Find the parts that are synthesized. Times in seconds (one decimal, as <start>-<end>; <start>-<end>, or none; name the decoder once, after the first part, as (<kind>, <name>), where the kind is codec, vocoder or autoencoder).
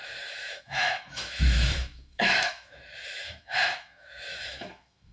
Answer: 0.0-5.1 (autoencoder, DAC-VAE)